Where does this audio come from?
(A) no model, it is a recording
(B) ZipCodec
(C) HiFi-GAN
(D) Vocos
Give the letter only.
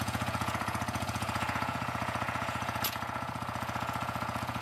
D